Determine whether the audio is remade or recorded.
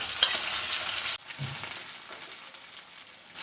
recorded